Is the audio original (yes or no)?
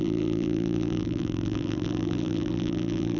no